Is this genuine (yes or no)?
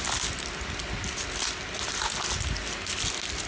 yes